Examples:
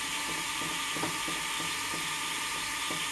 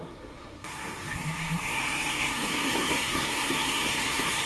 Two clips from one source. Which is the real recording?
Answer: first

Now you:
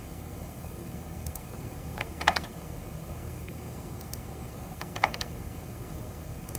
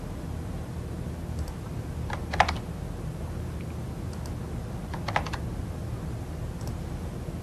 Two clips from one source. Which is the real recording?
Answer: second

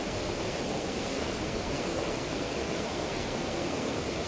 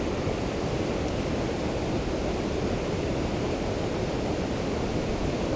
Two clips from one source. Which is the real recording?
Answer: second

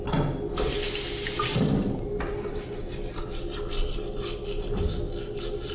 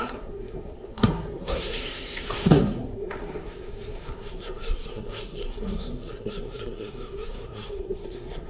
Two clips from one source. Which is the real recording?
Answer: first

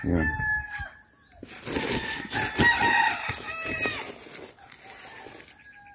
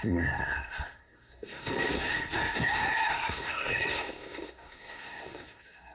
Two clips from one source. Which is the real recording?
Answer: first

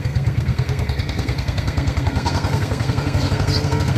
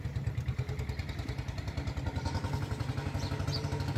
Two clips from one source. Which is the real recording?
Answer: second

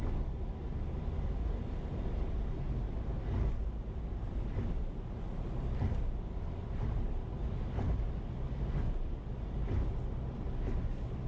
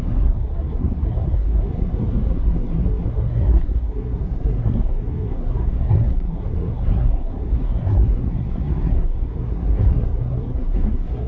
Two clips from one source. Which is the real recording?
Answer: first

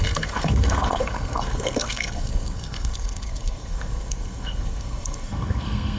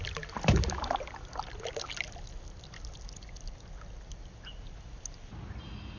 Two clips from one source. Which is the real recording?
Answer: second